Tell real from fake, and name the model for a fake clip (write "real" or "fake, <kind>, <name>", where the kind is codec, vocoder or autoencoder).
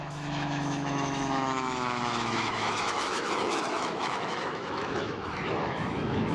fake, autoencoder, DAC-VAE